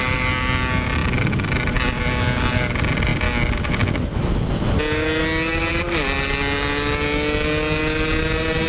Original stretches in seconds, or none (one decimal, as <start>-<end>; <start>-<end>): 0.0-8.7